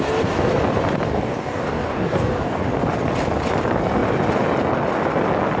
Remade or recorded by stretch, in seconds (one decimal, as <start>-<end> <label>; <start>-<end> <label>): 0.0-1.1 recorded; 1.1-2.7 remade; 2.7-5.6 recorded